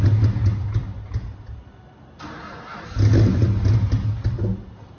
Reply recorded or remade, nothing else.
recorded